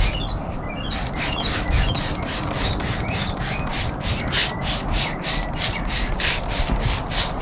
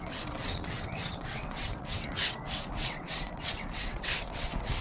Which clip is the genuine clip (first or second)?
first